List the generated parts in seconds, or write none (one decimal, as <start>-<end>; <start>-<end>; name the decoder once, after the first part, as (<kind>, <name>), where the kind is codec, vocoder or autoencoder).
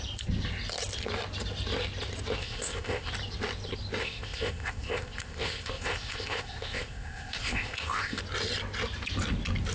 2.4-3.1 (codec, ZipCodec); 4.0-8.2